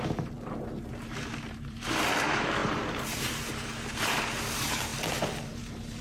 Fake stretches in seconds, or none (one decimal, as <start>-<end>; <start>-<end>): 0.0-4.9; 5.5-6.0